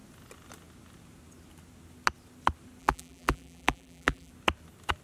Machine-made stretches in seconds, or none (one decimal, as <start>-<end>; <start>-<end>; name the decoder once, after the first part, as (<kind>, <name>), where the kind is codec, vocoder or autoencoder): 2.8-4.3 (vocoder, BigVGAN v2)